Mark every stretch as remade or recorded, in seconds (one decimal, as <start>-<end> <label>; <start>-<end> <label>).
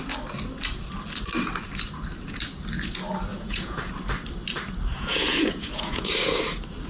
0.0-3.3 recorded; 3.3-3.9 remade; 3.9-4.9 recorded; 4.9-6.1 remade; 6.1-6.9 recorded